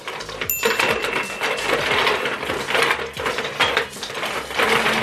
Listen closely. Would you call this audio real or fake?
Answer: real